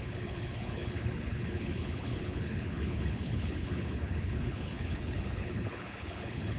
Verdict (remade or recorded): remade